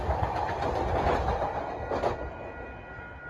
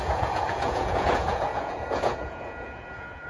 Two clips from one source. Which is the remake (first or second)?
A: second